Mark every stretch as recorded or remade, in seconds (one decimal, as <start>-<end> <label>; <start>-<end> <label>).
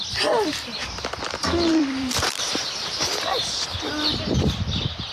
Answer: 0.0-1.7 recorded; 1.7-2.5 remade; 2.5-5.1 recorded